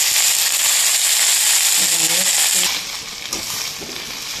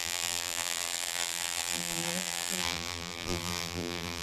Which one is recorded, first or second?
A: first